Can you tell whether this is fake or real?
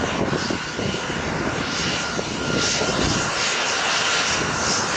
real